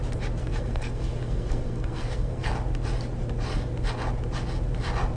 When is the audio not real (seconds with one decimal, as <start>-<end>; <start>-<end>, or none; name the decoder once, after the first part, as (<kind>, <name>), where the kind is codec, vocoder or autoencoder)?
0.4-2.5 (codec, SNAC)